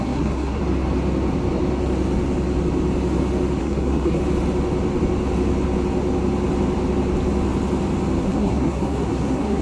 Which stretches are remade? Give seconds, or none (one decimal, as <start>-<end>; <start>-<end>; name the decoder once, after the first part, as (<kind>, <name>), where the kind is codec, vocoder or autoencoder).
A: 0.0-0.6 (codec, SNAC); 3.6-4.2; 8.2-9.6